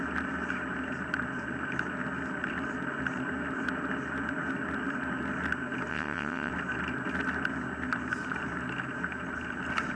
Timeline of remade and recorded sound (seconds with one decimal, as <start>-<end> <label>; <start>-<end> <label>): 0.0-5.9 recorded; 5.9-6.5 remade; 6.5-9.9 recorded